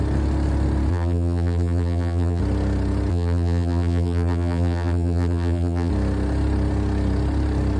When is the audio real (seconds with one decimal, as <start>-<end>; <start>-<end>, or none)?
0.0-0.9; 2.4-3.1; 5.9-7.8